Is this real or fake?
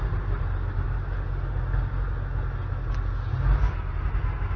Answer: real